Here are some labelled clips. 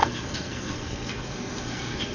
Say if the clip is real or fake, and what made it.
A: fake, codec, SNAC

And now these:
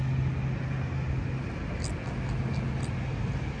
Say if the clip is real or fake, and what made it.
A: real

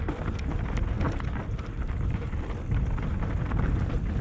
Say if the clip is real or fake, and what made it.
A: real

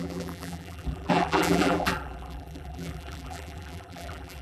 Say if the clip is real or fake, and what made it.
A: fake, vocoder, BigVGAN v2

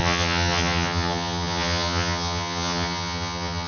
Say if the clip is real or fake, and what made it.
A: fake, vocoder, HiFi-GAN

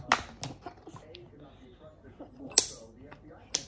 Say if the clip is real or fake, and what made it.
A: real